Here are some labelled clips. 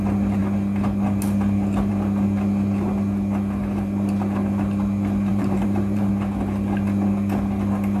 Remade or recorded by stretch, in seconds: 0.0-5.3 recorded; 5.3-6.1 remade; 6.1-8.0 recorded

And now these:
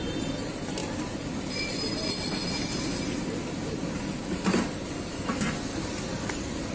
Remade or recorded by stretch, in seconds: 0.0-6.7 recorded

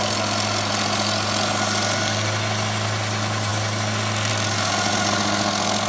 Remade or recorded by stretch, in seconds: 0.0-5.9 recorded

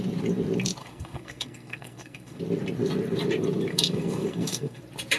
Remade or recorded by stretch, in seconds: 0.0-0.8 recorded; 0.8-2.4 remade; 2.4-3.7 recorded; 3.7-4.8 remade; 4.8-5.2 recorded

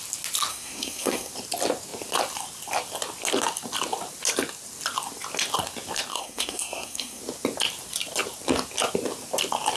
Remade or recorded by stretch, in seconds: 0.0-0.5 recorded; 0.5-1.3 remade; 1.3-6.1 recorded; 6.1-7.2 remade; 7.2-9.8 recorded

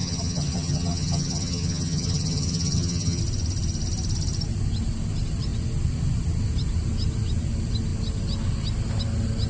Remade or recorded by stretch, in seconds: 0.0-3.2 remade; 3.2-9.5 recorded

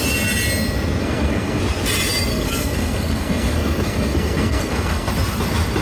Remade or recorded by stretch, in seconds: 0.0-1.0 recorded; 1.0-1.6 remade; 1.6-2.3 recorded; 2.3-5.1 remade; 5.1-5.8 recorded